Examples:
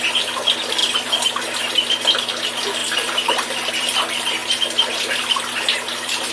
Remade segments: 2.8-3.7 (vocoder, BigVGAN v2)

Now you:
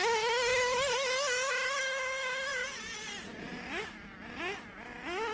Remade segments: 2.5-3.6 (vocoder, BigVGAN v2)

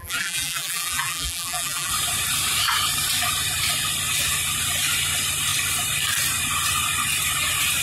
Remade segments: 0.0-1.9 (vocoder, BigVGAN v2)